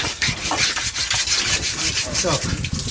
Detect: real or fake real